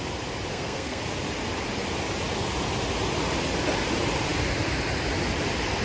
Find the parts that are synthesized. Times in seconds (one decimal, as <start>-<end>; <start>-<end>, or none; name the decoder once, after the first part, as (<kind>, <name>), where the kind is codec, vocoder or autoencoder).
0.5-1.0 (codec, SNAC)